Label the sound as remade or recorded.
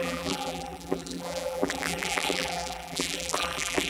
remade